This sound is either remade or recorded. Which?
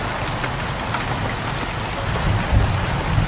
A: recorded